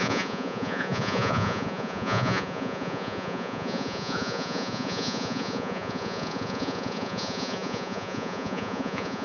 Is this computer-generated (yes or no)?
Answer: yes